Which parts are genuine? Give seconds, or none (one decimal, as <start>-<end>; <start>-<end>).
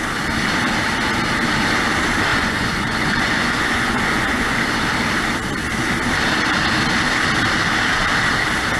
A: 0.0-2.3; 4.6-8.8